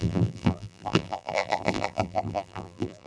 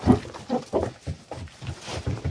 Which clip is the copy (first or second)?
first